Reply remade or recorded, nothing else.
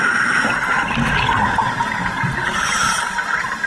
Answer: recorded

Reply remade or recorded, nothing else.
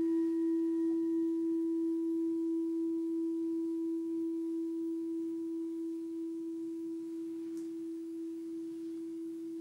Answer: remade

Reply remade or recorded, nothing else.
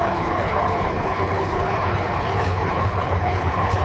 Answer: remade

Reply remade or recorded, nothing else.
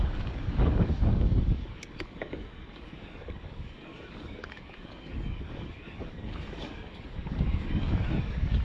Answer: remade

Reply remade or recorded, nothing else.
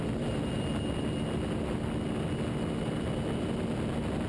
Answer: recorded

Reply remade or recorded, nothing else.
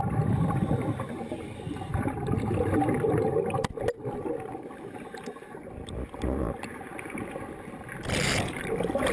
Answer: recorded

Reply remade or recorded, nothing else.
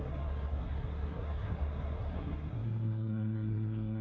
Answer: remade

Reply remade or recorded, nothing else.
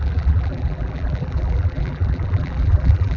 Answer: remade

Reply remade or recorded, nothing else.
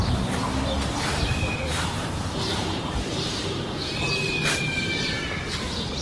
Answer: remade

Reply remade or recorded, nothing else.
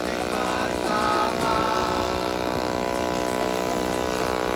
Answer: recorded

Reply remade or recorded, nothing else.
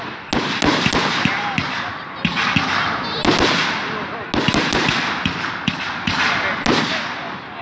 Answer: recorded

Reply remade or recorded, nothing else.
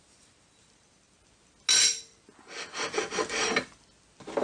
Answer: recorded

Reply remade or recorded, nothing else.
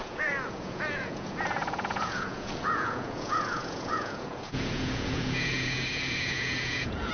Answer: remade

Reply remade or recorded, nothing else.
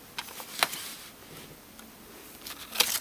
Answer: recorded